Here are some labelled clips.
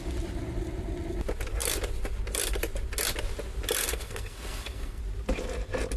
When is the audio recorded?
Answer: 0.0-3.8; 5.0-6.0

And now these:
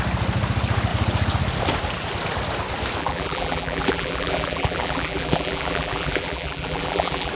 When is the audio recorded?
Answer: 0.0-3.0

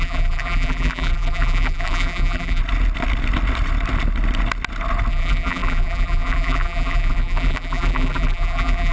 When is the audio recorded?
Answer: 2.6-5.1

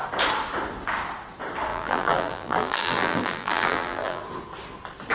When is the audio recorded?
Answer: 0.0-1.7; 4.2-5.1

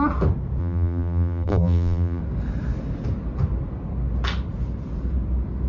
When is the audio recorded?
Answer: 0.0-0.6; 2.2-5.7